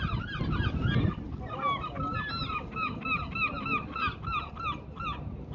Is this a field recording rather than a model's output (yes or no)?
yes